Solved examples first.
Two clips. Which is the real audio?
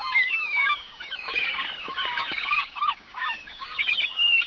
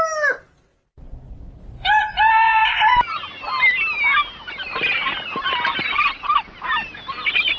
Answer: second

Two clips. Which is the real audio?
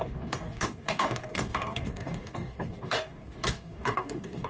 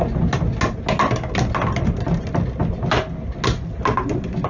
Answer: second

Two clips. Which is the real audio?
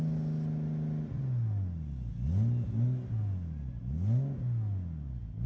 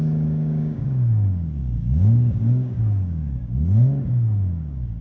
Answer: first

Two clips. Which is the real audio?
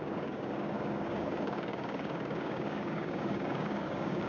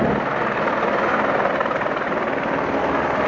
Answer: second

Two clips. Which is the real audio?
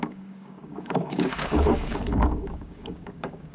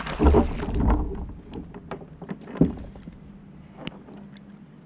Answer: second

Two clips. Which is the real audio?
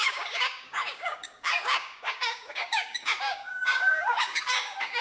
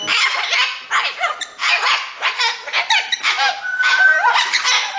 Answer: second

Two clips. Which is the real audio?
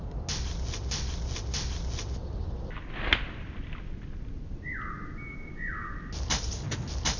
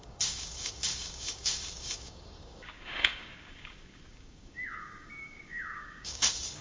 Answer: first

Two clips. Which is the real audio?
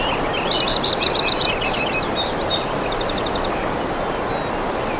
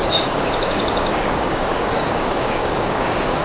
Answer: first